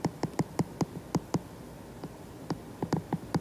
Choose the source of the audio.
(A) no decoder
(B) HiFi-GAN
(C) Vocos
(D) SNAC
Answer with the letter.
A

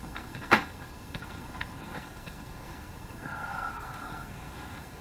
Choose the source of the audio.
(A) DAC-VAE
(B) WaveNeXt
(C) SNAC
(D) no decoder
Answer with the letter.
C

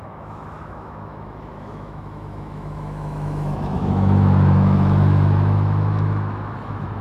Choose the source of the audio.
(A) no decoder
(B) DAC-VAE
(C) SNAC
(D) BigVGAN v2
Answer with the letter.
B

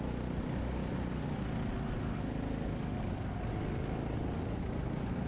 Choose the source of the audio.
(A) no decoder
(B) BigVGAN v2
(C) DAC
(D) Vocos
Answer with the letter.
A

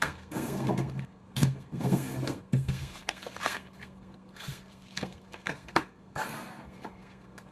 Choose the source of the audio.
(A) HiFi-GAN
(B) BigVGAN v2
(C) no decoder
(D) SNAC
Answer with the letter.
D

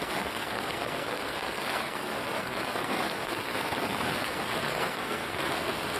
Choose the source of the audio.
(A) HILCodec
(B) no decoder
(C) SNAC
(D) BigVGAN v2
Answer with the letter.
C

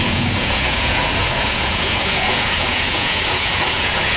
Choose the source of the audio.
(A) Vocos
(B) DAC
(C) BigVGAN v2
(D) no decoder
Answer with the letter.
A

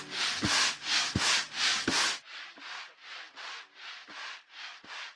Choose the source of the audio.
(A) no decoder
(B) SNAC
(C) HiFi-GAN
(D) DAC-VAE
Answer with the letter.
A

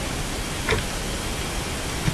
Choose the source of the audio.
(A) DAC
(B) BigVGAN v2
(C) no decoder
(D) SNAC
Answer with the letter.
C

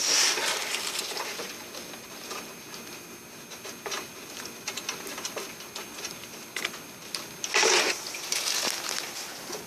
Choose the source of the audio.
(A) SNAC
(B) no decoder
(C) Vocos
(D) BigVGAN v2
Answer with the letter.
B